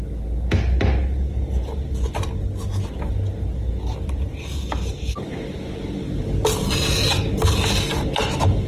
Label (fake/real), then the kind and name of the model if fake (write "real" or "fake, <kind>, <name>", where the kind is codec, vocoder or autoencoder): real